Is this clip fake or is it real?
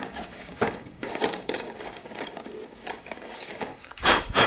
fake